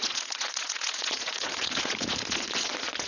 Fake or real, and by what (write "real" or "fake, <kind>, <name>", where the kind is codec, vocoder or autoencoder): fake, vocoder, Vocos